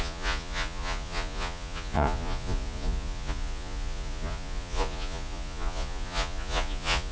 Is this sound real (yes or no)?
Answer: no